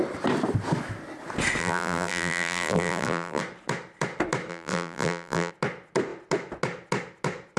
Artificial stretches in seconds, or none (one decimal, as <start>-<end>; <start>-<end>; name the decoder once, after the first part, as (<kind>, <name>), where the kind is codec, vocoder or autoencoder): 1.6-3.4 (vocoder, BigVGAN v2); 4.5-5.5